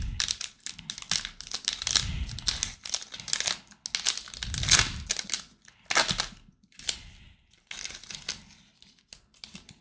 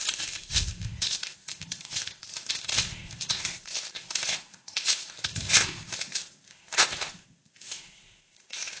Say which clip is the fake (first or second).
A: second